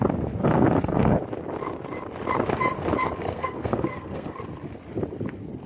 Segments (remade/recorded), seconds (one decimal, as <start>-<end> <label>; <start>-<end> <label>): 0.0-0.4 recorded; 0.4-1.2 remade; 1.2-3.2 recorded; 3.2-4.4 remade; 4.4-5.7 recorded